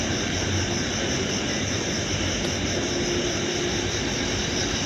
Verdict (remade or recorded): recorded